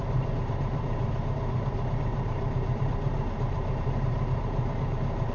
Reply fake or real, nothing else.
fake